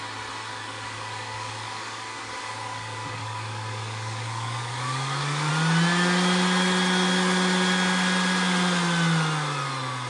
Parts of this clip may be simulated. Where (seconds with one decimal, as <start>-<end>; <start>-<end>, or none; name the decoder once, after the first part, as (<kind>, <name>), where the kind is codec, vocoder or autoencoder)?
0.5-5.5 (codec, DAC)